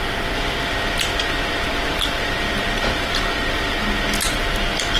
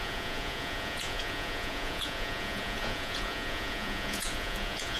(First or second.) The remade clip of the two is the second